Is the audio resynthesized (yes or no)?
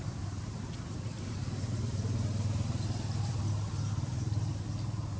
no